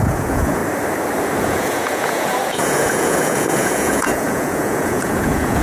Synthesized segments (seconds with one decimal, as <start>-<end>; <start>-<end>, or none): 0.0-0.6; 1.4-5.6